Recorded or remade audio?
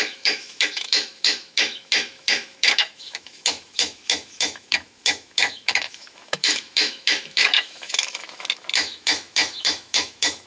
remade